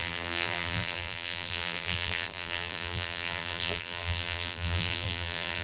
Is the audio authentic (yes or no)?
no